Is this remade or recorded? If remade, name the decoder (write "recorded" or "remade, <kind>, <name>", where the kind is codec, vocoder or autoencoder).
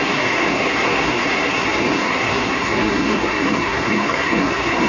remade, codec, SNAC